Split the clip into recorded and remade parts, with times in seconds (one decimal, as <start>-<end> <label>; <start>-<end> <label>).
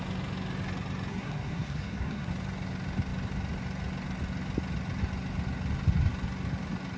0.0-1.1 recorded; 1.1-2.3 remade; 2.3-7.0 recorded